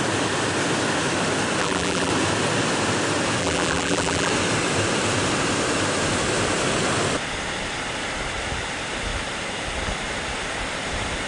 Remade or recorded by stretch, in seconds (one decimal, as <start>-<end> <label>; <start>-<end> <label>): 0.0-1.6 recorded; 1.6-2.1 remade; 2.1-3.4 recorded; 3.4-4.3 remade; 4.3-11.3 recorded